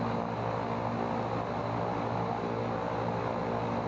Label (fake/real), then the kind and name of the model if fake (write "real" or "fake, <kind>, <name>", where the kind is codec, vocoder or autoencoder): fake, vocoder, BigVGAN v2